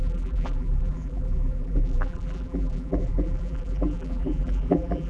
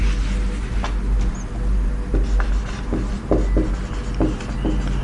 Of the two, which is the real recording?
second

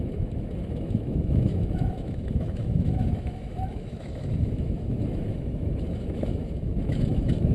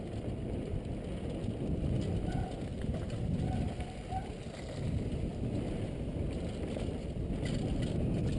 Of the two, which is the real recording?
second